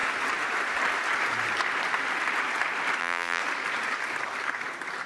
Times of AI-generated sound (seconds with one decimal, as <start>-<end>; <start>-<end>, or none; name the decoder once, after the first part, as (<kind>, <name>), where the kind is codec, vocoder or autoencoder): 3.0-3.4 (vocoder, BigVGAN v2)